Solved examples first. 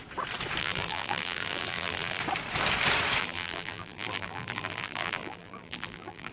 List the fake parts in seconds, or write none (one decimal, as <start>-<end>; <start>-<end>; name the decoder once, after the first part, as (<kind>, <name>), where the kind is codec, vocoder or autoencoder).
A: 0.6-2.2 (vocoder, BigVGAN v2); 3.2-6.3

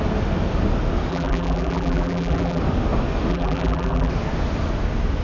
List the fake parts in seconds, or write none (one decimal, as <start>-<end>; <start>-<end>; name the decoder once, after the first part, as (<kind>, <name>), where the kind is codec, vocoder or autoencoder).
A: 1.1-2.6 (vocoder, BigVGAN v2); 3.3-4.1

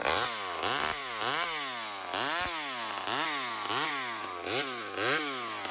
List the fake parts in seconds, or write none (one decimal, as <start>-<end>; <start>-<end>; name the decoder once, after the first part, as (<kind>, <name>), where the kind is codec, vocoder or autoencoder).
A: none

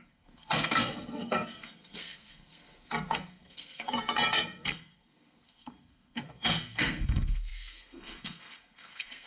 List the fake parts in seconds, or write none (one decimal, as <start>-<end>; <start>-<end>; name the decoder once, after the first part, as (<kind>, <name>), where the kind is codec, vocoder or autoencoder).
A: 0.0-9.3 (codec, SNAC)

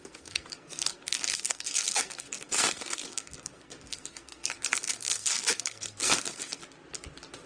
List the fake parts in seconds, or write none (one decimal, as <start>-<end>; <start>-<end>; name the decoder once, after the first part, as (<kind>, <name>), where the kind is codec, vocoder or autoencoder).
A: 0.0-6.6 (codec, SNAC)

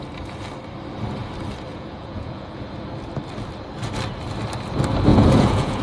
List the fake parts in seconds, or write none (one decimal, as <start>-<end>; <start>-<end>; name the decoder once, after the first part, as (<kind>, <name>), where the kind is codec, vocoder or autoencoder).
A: 1.7-2.6 (vocoder, Vocos); 5.1-5.8

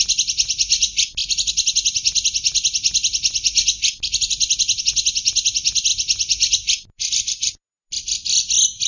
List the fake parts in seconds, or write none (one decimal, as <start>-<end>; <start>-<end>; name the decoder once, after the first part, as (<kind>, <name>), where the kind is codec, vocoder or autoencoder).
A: none